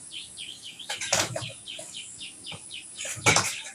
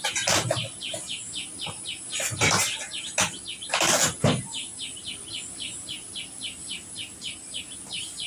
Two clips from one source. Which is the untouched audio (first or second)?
second